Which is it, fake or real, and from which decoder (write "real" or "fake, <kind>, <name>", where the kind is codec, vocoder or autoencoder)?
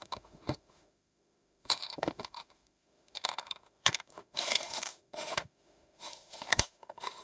fake, autoencoder, DAC-VAE